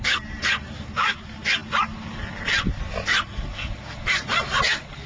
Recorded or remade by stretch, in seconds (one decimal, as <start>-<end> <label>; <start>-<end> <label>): 0.0-5.1 recorded